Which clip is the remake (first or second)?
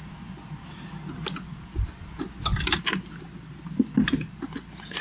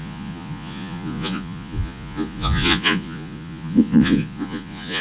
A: second